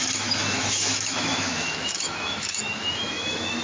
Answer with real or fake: fake